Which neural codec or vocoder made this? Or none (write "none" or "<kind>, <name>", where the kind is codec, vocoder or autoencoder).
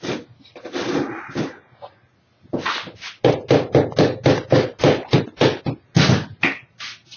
none